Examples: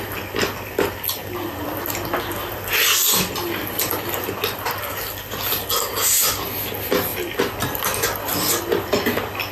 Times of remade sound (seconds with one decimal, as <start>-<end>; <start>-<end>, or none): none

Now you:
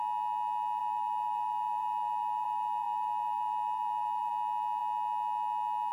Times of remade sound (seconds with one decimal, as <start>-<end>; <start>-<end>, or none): 0.8-4.3

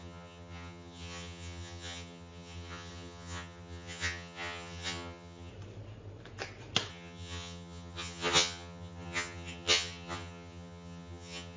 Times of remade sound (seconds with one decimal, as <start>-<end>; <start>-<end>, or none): 0.0-5.5; 6.9-11.6

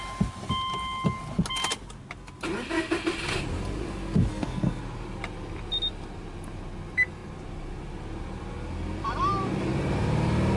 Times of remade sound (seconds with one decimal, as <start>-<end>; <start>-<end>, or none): 4.3-4.8

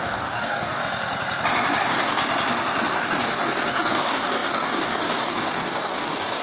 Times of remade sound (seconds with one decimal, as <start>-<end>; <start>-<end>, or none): 0.0-0.8; 1.8-2.2; 2.9-6.4